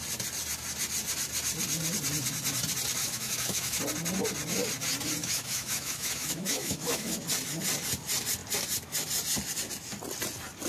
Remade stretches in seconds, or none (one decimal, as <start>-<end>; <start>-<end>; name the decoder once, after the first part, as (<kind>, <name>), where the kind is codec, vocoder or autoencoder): 3.0-3.8 (autoencoder, DAC-VAE); 5.2-7.1